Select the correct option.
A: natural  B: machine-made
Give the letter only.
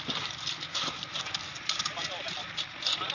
A